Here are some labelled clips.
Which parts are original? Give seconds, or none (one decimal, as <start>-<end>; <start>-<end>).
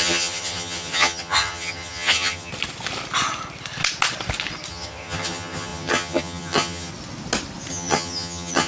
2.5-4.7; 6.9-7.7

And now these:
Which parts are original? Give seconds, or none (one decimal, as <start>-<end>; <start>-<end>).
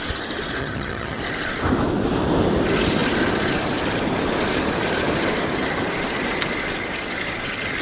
0.0-0.6; 1.2-7.8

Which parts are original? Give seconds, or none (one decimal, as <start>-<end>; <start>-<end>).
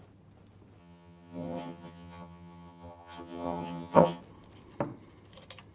0.0-0.8; 4.2-5.7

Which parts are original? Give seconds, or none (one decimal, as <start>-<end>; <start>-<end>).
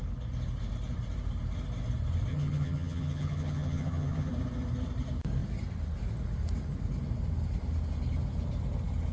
0.0-2.3; 4.3-9.1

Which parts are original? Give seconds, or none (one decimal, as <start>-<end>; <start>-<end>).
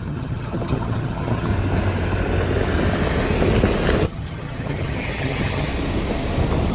1.5-4.0; 5.7-6.7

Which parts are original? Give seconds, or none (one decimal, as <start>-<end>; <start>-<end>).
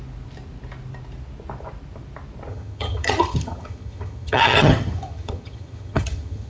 0.0-2.5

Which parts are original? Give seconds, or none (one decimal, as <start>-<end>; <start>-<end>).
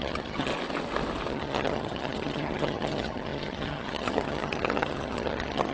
0.5-1.3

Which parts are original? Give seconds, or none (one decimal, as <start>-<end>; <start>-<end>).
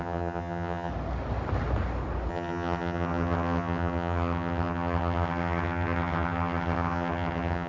0.9-2.3